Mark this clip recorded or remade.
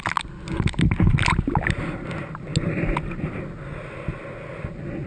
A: recorded